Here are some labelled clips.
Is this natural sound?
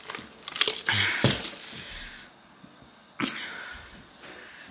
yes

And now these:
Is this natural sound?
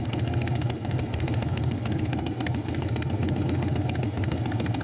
no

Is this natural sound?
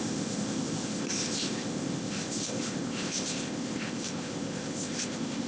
no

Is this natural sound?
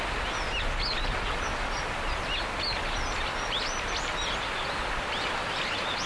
yes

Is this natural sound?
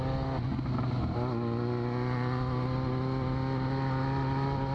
yes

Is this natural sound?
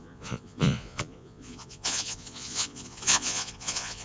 no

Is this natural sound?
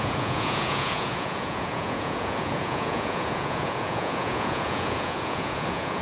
no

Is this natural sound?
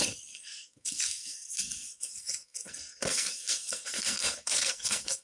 no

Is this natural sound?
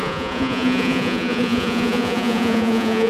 no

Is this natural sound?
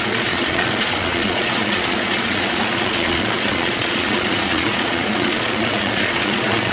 no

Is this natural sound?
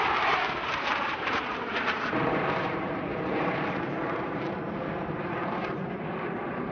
no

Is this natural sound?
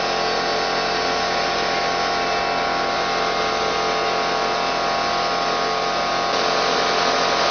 yes